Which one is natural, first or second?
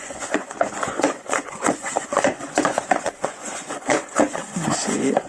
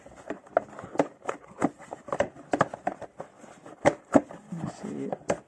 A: second